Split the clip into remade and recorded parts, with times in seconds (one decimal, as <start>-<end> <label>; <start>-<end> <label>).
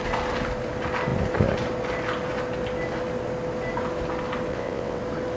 0.0-4.5 recorded; 4.5-5.0 remade; 5.0-5.4 recorded